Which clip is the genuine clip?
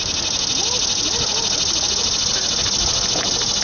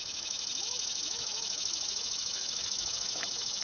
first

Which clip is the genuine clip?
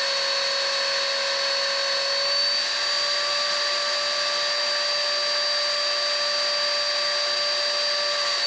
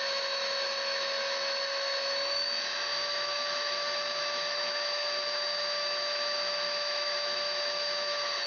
first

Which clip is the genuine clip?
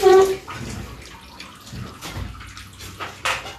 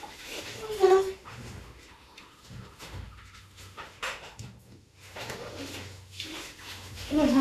first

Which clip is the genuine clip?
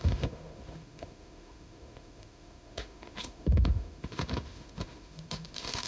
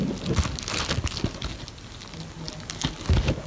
second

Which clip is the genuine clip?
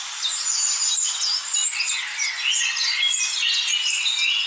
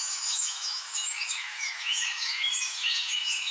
first